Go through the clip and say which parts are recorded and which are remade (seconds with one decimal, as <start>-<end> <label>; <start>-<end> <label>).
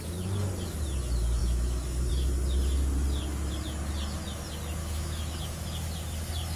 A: 0.0-1.4 recorded; 1.4-2.1 remade; 2.1-4.8 recorded; 4.8-5.4 remade; 5.4-6.6 recorded